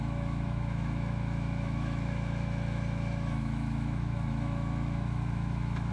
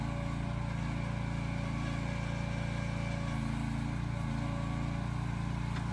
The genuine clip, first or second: second